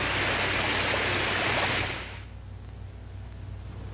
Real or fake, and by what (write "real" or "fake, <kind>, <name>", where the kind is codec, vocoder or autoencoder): real